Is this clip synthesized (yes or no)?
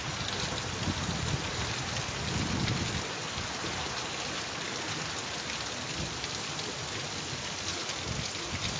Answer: no